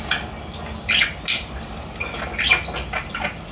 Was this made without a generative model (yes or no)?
yes